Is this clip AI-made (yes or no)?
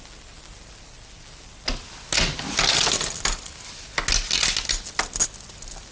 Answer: no